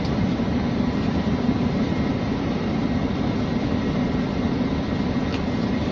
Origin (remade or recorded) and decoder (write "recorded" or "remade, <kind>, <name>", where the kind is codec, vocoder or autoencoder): remade, vocoder, BigVGAN v2